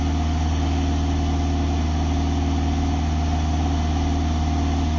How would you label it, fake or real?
real